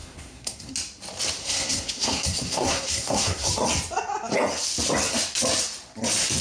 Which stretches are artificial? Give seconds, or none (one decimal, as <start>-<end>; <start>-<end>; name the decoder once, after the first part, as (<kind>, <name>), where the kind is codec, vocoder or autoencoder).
0.0-0.7 (codec, SNAC); 1.4-3.5